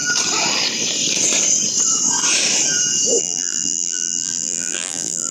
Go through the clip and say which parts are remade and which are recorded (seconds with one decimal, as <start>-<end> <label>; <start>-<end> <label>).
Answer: 0.0-3.2 recorded; 3.2-5.3 remade